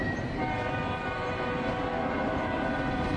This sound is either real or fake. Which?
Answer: fake